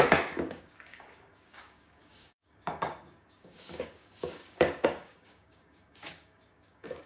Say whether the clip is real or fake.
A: fake